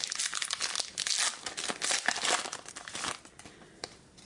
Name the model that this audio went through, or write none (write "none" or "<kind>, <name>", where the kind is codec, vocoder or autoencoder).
none